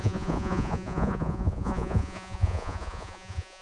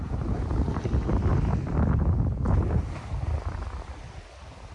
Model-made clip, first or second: first